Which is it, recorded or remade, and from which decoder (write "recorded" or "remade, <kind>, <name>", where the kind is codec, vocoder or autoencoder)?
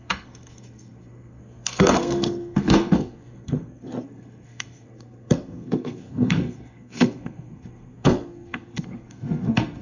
remade, codec, SNAC